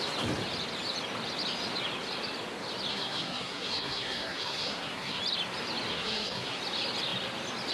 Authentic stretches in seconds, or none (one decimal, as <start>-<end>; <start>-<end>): 0.0-2.9; 5.2-5.9; 6.6-7.7